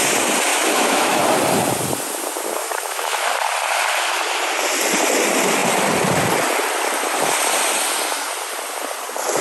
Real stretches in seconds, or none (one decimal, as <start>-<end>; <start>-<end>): 0.0-0.5; 1.2-2.6; 3.3-9.4